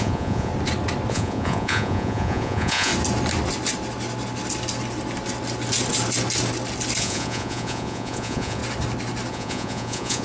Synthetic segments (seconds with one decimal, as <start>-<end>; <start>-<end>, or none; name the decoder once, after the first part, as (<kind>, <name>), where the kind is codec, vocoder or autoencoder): 0.0-0.5 (vocoder, Vocos); 1.1-2.9; 7.0-8.6; 9.3-10.2